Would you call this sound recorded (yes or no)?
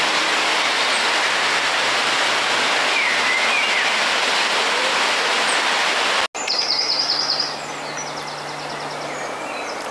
yes